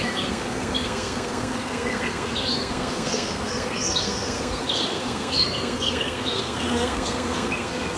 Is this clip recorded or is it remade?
remade